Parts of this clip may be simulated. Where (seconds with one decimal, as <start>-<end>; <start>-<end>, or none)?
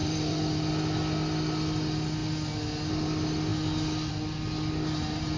0.0-0.7